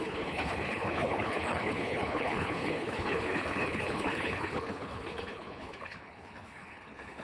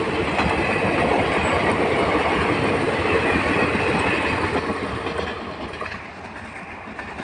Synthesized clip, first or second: first